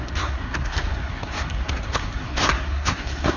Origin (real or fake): fake